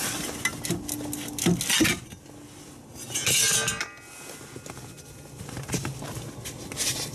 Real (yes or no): yes